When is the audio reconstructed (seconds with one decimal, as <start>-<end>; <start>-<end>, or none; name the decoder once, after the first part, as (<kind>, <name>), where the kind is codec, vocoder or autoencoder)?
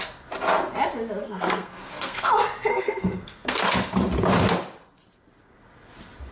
1.2-2.3 (codec, SNAC); 2.7-3.7